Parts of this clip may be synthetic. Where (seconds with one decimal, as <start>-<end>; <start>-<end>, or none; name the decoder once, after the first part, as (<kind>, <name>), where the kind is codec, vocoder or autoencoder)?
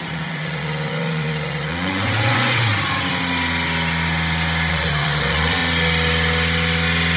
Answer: 0.0-2.7 (vocoder, Vocos); 4.7-5.6